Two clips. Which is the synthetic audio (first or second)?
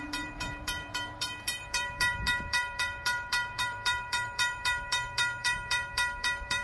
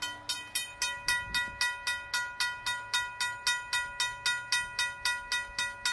first